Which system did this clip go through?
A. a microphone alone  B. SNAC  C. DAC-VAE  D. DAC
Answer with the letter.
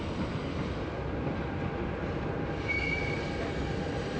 A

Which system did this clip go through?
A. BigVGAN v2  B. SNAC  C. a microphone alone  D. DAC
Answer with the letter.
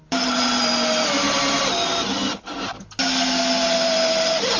C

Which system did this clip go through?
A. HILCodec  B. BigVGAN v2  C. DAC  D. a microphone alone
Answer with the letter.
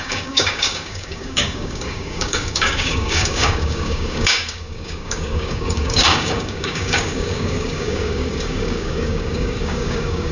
C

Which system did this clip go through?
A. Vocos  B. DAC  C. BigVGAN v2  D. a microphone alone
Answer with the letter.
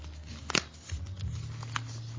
D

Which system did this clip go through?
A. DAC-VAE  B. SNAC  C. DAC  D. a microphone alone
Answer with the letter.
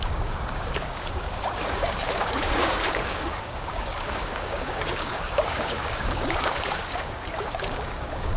C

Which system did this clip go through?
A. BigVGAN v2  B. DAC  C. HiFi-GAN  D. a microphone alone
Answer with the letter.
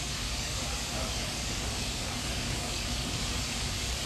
B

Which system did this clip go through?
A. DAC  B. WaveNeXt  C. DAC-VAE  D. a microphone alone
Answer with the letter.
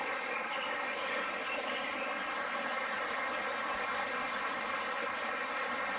D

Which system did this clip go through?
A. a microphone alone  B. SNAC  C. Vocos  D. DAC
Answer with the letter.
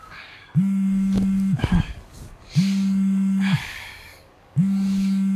D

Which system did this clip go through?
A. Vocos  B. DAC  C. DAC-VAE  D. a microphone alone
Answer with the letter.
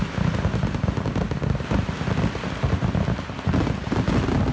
D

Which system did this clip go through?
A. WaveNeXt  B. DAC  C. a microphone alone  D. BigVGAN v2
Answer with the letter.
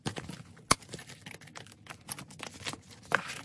C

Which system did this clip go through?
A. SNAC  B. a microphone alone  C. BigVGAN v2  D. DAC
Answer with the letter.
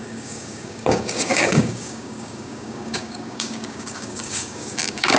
D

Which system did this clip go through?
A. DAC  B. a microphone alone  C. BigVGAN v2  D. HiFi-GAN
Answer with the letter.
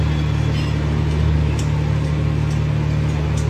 B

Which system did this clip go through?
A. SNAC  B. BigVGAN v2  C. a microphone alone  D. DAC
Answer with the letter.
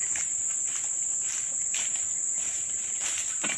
C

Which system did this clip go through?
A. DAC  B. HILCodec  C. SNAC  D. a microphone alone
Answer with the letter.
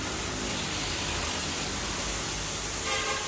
D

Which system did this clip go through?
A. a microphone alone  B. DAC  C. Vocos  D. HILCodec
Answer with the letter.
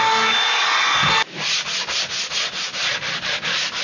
A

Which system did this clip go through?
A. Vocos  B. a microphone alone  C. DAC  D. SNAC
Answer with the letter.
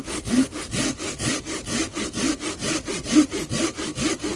B